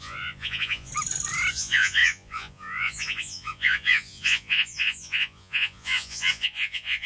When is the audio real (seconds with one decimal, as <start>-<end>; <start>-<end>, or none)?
0.9-1.5

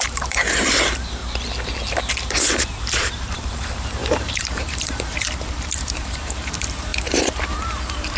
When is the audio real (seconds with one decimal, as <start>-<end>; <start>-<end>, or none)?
1.2-2.1

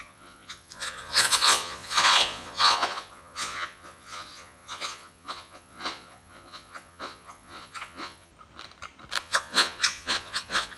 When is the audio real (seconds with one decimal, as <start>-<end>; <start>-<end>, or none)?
8.3-9.2

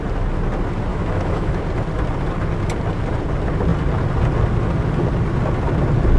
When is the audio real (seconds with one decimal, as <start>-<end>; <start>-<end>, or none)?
0.0-0.9; 1.6-6.2